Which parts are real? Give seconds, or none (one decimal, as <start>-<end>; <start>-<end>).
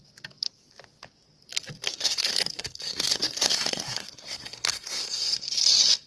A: 0.0-1.9; 5.6-6.1